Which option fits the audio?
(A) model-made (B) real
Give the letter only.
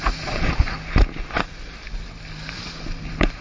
B